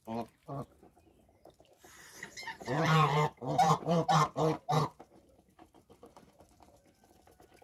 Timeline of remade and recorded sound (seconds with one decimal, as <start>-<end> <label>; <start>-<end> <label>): 0.0-2.6 recorded; 2.6-6.3 remade; 6.3-7.6 recorded